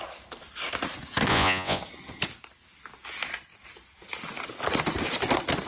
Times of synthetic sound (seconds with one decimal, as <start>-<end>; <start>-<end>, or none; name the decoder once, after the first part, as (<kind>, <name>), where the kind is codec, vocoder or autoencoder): 1.3-1.8 (vocoder, Vocos)